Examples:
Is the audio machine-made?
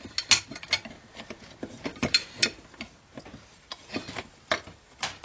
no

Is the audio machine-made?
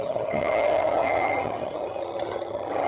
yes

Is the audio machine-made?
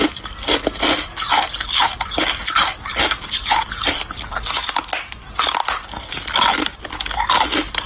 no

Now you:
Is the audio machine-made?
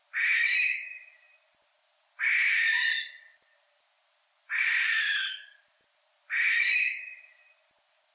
no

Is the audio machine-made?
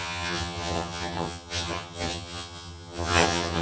yes